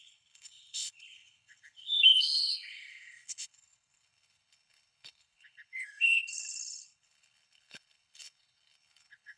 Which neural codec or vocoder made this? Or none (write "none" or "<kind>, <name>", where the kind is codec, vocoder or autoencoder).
codec, HILCodec